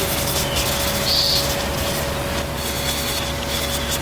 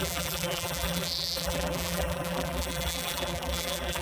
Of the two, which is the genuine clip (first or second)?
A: first